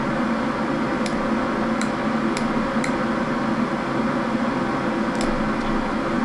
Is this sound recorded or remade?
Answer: recorded